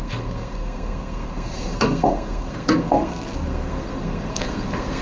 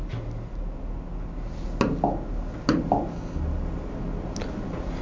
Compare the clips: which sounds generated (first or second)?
first